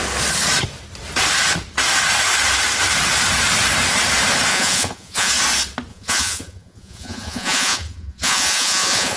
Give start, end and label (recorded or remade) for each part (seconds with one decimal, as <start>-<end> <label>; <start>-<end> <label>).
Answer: 0.0-4.5 recorded; 4.5-5.3 remade; 5.3-5.9 recorded; 5.9-9.2 remade